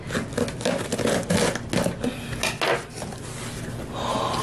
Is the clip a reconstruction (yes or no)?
no